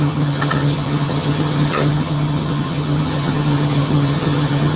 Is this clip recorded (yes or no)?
no